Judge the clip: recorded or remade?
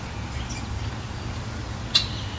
recorded